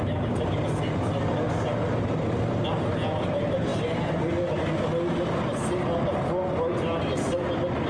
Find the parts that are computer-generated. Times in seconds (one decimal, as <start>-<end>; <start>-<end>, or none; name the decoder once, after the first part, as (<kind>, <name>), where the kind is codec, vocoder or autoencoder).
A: none